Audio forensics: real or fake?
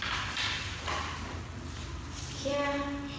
real